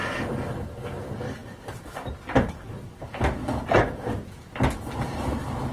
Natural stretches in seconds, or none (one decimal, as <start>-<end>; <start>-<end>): 0.0-5.7